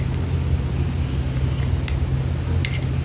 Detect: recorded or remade recorded